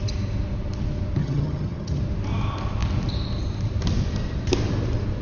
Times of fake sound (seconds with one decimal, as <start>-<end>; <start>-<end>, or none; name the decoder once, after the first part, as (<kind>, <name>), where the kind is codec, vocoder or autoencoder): 1.2-2.0 (vocoder, HiFi-GAN)